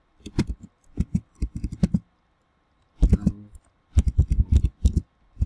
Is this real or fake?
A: real